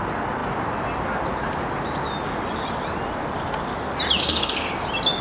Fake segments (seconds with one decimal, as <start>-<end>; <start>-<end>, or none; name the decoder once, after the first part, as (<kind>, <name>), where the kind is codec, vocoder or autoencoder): 4.2-4.7 (codec, SNAC)